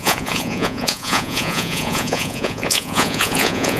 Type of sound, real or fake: fake